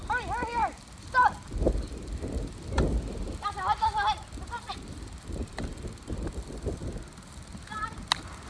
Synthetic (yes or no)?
no